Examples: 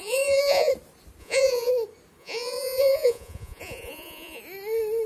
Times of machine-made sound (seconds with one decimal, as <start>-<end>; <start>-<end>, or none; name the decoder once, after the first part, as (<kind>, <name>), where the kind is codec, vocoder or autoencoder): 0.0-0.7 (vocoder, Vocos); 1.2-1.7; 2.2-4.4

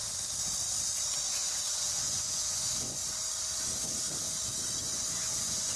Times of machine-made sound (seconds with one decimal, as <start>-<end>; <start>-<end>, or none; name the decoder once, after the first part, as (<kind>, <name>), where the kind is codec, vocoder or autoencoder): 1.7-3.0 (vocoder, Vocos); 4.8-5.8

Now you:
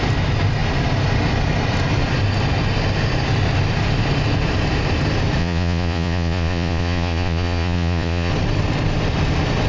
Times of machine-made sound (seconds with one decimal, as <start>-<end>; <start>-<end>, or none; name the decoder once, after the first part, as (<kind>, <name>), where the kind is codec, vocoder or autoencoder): 5.4-8.3 (vocoder, Vocos)

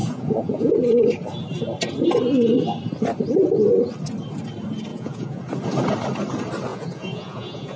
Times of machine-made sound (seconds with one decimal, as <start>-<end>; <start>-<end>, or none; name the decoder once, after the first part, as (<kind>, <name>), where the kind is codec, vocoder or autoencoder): 0.0-0.7 (vocoder, Vocos); 4.9-5.4; 6.7-7.8

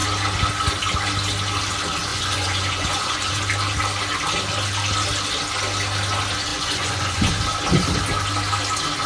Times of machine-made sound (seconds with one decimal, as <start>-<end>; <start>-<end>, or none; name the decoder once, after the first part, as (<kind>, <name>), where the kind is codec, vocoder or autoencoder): 2.1-3.3 (vocoder, Vocos); 6.5-7.3

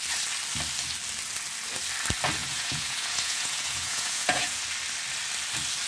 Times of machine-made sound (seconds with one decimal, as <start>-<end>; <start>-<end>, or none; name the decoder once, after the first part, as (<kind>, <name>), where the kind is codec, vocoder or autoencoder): 2.4-4.6 (vocoder, Vocos)

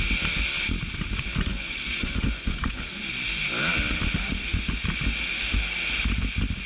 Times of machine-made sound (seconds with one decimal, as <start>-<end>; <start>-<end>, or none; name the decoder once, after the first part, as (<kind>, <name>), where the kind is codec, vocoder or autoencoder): 1.5-2.8 (vocoder, Vocos)

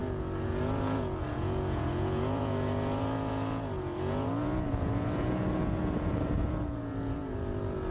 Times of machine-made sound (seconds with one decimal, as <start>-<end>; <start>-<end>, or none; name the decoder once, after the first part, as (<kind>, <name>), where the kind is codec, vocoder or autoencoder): 0.0-7.9 (vocoder, Vocos)